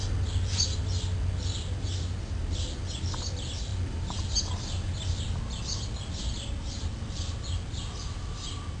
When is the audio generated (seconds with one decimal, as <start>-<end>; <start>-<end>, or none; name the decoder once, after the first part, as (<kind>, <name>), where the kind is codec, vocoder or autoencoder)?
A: none